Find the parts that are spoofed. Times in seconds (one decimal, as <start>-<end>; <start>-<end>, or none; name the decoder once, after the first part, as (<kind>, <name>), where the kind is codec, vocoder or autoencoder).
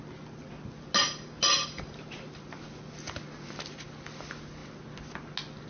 none